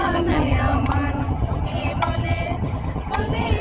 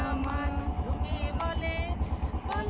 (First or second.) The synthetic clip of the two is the first